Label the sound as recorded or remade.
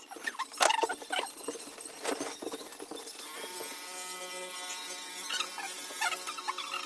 recorded